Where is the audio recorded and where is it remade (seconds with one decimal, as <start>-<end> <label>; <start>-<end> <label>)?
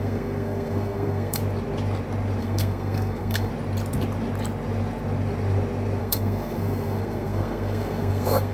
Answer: 0.0-1.4 remade; 1.4-2.4 recorded; 2.4-3.5 remade; 3.5-6.0 recorded; 6.0-8.5 remade